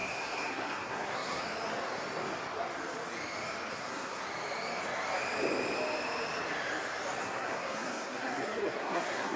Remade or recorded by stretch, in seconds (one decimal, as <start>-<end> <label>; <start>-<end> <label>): 0.0-1.4 remade; 1.4-3.7 recorded; 3.7-4.2 remade; 4.2-7.2 recorded; 7.2-9.4 remade